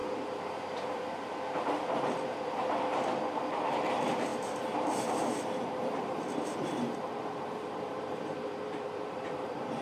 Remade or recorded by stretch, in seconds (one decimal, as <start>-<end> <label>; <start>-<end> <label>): 0.0-3.7 recorded; 3.7-9.8 remade